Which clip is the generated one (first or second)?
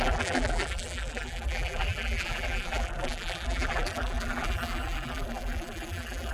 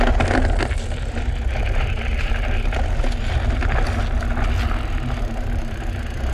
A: first